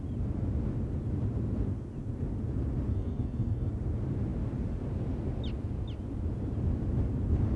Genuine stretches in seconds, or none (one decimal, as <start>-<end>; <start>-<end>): 0.0-2.9; 3.7-7.6